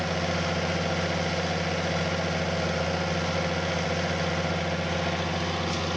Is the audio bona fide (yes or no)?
yes